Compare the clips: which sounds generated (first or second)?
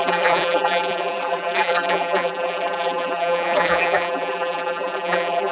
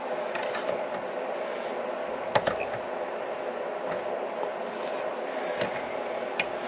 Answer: first